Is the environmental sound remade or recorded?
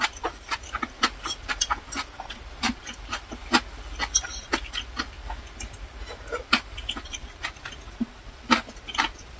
recorded